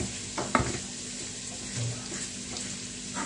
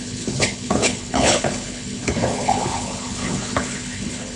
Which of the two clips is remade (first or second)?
second